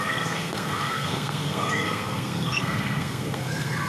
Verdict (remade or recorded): remade